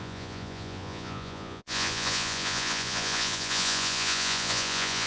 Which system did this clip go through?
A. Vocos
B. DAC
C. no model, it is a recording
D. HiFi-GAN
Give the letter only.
A